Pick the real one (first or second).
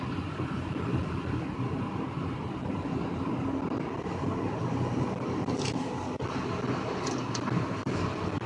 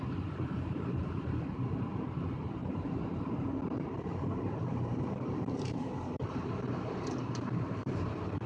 first